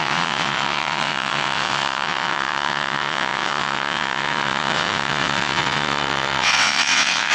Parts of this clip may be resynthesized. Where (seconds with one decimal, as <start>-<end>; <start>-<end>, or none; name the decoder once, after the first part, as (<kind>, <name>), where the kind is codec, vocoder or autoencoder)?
0.0-7.3 (vocoder, WaveNeXt)